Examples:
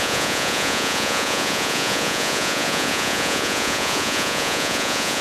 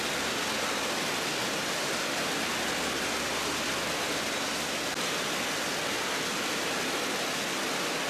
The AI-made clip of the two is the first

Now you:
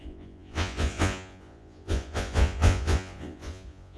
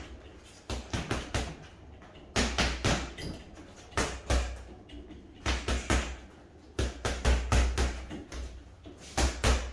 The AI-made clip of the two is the first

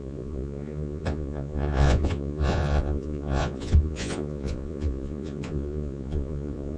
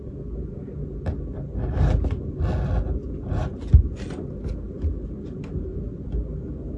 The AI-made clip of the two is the first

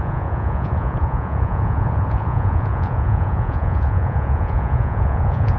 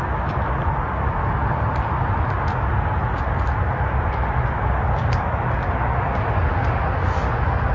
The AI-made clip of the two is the first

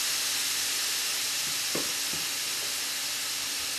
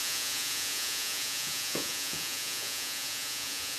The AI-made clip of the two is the second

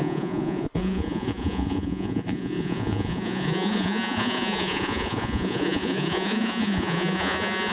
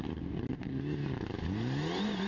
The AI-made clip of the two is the first